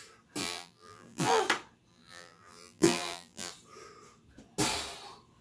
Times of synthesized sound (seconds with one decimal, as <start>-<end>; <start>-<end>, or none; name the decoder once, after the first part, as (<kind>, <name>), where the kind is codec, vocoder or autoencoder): 0.4-1.4 (vocoder, BigVGAN v2); 1.9-3.5